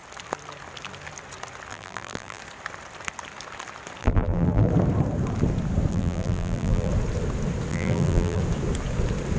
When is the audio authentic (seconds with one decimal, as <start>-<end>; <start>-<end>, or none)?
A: 0.0-1.7; 2.4-4.0; 4.7-5.9; 6.9-7.7; 8.4-9.4